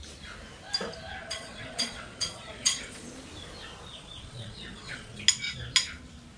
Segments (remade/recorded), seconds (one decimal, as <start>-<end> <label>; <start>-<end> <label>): 0.0-1.2 recorded; 1.2-3.0 remade; 3.0-3.9 recorded; 3.9-5.2 remade; 5.2-6.4 recorded